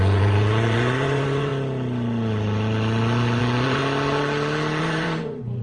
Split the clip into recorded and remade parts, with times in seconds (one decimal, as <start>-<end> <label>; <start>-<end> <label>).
0.0-1.5 remade; 1.5-3.4 recorded; 3.4-3.8 remade; 3.8-4.8 recorded; 4.8-5.6 remade